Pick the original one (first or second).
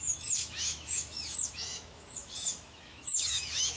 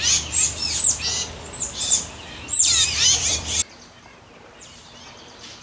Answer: second